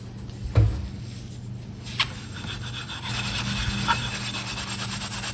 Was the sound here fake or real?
real